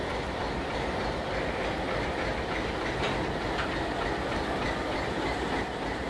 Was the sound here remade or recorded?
recorded